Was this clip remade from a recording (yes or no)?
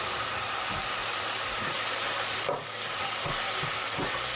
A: no